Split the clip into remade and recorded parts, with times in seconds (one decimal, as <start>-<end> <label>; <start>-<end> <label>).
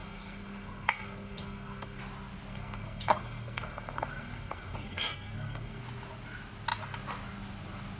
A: 0.0-2.0 remade; 2.0-2.5 recorded; 2.5-5.8 remade; 5.8-8.0 recorded